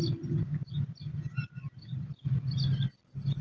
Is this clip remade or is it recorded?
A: recorded